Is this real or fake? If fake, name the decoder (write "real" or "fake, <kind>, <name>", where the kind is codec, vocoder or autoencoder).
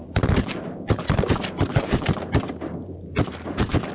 fake, vocoder, BigVGAN v2